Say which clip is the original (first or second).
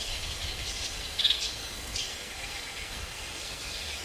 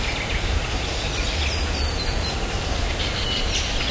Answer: second